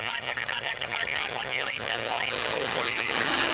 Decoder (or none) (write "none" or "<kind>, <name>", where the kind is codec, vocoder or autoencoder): vocoder, HiFi-GAN